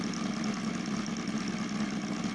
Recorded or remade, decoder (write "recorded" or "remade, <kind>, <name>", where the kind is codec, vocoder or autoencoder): recorded